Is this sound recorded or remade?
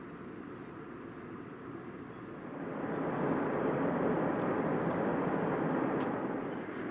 recorded